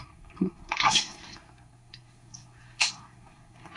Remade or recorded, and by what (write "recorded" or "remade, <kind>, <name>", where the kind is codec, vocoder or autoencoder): remade, codec, SNAC